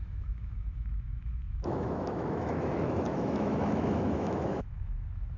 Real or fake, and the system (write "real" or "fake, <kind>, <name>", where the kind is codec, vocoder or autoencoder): fake, autoencoder, DAC-VAE